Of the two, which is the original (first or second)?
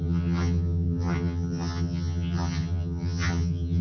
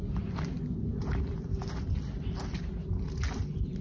second